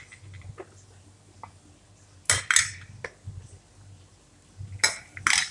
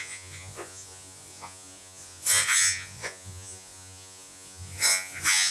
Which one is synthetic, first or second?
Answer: second